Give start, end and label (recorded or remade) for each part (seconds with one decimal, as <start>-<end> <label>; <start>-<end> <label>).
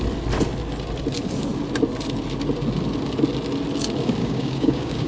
0.0-4.2 recorded; 4.2-5.1 remade